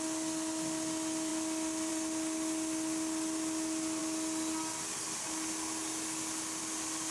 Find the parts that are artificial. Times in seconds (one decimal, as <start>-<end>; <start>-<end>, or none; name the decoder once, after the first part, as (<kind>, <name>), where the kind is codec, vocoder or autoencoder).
none